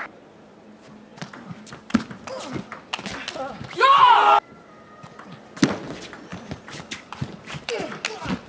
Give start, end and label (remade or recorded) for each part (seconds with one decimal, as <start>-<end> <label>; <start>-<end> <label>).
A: 0.0-1.1 recorded; 1.1-2.1 remade; 2.1-6.3 recorded; 6.3-7.7 remade; 7.7-8.5 recorded